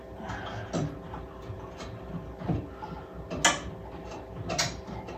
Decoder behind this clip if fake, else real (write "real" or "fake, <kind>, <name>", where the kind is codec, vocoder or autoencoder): real